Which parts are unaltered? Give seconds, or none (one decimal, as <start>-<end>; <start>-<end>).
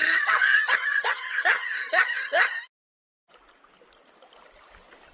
2.6-5.1